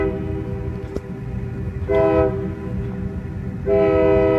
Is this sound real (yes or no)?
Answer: yes